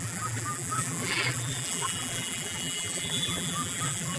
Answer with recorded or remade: remade